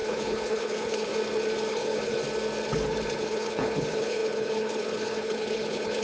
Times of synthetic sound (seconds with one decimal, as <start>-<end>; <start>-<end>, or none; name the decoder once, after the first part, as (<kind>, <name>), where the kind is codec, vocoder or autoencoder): 0.0-1.1 (codec, HILCodec); 1.7-2.2; 2.7-6.0